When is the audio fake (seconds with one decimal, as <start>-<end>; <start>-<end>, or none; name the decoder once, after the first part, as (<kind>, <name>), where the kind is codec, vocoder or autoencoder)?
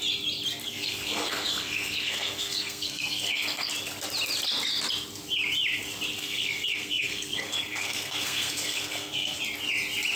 0.6-3.7 (codec, SNAC); 6.2-9.4